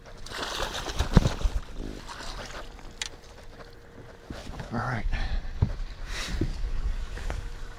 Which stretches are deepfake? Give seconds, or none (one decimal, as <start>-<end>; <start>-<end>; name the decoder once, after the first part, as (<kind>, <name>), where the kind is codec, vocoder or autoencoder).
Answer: 4.4-5.3 (codec, DAC); 6.5-7.8

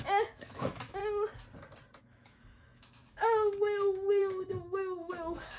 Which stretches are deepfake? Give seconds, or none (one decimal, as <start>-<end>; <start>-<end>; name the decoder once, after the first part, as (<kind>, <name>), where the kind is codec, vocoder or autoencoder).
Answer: 0.0-1.0 (autoencoder, DAC-VAE); 2.0-5.6

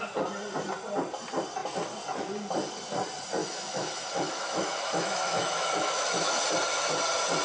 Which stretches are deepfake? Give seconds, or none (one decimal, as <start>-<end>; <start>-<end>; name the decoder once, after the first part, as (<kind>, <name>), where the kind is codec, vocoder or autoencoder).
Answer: 3.4-6.4 (autoencoder, DAC-VAE)

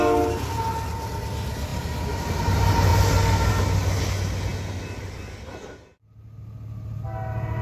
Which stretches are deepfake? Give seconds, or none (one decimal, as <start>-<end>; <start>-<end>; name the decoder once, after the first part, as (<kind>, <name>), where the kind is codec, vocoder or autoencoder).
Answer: none

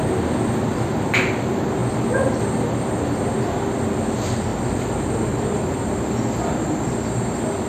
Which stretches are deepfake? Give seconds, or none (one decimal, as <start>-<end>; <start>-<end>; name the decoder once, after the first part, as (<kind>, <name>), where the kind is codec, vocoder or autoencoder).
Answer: 4.5-7.1 (vocoder, BigVGAN v2)

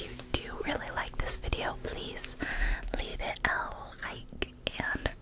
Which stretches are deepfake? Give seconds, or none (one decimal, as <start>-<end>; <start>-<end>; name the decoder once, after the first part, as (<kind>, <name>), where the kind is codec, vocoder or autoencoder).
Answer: 0.0-0.8 (autoencoder, DAC-VAE); 2.4-3.1; 4.7-5.2

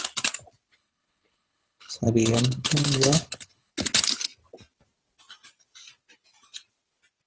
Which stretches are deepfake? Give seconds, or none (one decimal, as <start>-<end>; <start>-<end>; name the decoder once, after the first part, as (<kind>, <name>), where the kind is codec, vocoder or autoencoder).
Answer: 0.7-3.7 (codec, HILCodec)

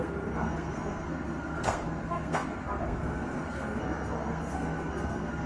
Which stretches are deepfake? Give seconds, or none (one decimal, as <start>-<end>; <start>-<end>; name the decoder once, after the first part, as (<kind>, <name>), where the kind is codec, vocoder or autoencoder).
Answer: 0.0-5.5 (codec, SNAC)